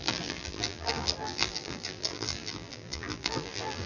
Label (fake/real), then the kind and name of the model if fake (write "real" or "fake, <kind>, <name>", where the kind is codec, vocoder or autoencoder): fake, vocoder, BigVGAN v2